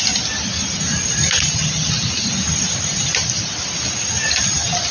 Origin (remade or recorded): recorded